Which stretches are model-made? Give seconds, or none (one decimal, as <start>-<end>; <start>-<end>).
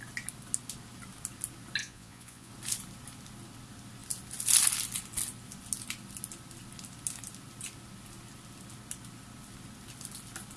1.8-2.5